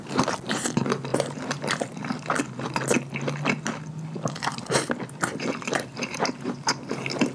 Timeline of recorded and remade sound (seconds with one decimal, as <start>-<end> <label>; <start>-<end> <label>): 0.0-1.1 recorded; 1.1-2.0 remade; 2.0-7.3 recorded